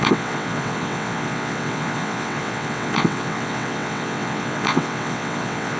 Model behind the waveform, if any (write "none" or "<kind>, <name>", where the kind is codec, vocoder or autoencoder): vocoder, WaveNeXt